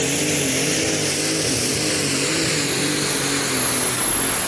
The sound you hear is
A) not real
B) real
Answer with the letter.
B